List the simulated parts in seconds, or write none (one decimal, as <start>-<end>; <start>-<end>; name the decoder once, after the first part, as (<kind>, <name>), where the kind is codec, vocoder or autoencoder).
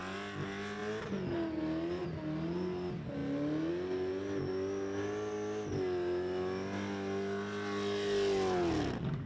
none